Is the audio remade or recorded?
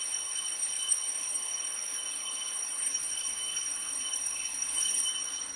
remade